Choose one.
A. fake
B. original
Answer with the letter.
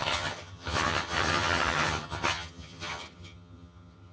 A